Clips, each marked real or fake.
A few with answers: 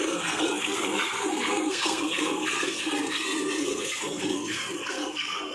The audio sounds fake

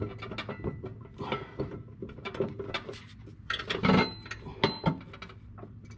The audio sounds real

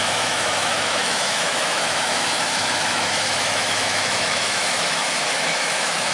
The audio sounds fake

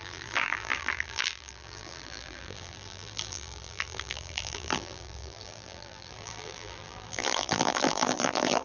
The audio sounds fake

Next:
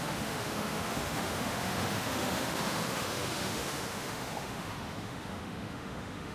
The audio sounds fake